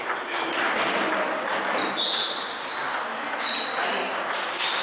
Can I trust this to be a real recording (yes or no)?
yes